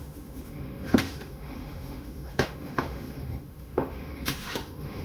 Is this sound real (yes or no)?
no